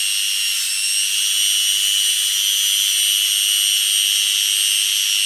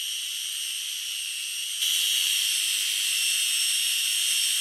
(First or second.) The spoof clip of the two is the second